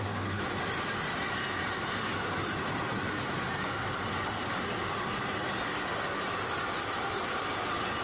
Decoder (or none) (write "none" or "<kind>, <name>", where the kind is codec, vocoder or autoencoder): none